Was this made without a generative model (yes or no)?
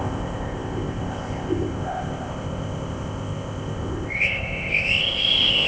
no